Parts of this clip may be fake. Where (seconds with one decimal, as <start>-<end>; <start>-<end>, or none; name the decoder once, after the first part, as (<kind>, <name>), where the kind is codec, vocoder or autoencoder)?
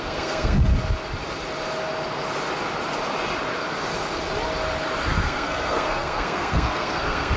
0.0-0.7 (codec, SNAC); 5.1-7.4